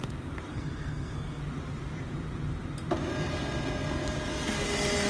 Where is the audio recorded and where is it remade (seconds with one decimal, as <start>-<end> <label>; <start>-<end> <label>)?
0.0-0.5 recorded; 0.5-1.4 remade; 1.4-5.1 recorded